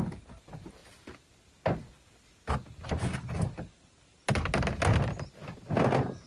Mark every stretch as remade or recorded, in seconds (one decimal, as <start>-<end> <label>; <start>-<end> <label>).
0.0-6.3 recorded